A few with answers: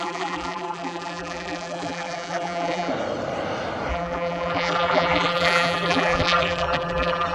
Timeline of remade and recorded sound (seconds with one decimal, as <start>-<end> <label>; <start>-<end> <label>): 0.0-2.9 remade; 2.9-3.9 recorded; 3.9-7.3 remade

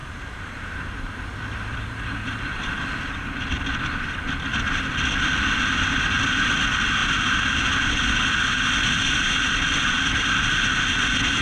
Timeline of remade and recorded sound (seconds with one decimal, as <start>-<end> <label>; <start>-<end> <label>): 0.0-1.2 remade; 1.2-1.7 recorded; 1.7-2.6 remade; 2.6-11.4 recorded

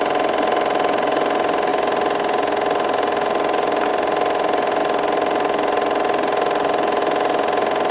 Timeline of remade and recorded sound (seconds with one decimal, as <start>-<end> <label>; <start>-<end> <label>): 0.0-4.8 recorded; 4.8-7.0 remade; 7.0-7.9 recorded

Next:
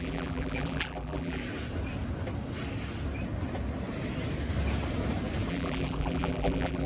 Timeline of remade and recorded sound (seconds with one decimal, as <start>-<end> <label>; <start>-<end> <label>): 0.0-1.4 remade; 1.4-5.5 recorded; 5.5-6.9 remade

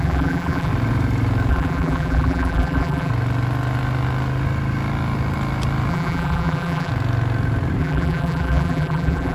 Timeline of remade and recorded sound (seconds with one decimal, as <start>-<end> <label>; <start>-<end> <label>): 0.0-0.7 remade; 0.7-1.5 recorded; 1.5-3.1 remade; 3.1-5.9 recorded; 5.9-6.9 remade; 6.9-7.8 recorded; 7.8-9.3 remade